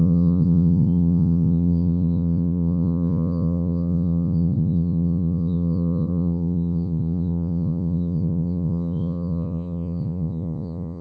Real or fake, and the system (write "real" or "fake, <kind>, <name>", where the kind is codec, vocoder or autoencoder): fake, vocoder, Vocos